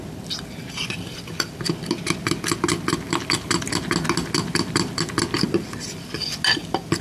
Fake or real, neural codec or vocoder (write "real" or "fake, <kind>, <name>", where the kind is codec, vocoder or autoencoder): real